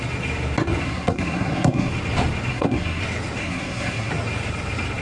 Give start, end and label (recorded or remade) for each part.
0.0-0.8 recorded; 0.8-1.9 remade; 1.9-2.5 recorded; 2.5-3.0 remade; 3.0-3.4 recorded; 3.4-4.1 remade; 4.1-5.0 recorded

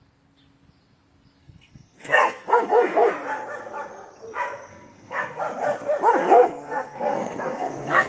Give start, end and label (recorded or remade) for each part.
0.0-1.4 recorded; 1.4-3.1 remade; 3.1-4.7 recorded; 4.7-5.4 remade; 5.4-6.2 recorded; 6.2-8.1 remade